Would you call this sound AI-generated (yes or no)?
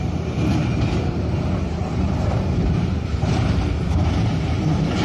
yes